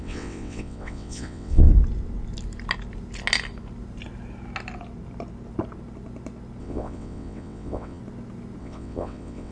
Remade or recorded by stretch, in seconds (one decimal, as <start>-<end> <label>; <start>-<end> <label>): 0.0-1.7 remade; 1.7-6.6 recorded; 6.6-8.0 remade; 8.0-8.6 recorded; 8.6-9.5 remade